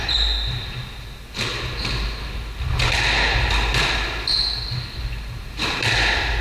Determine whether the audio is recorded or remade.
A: recorded